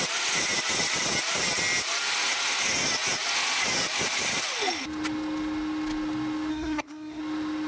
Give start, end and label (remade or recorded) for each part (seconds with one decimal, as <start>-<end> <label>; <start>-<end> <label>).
0.0-6.5 recorded; 6.5-7.2 remade; 7.2-7.7 recorded